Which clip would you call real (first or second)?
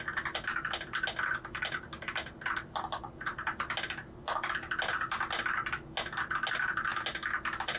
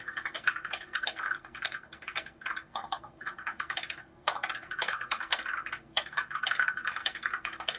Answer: first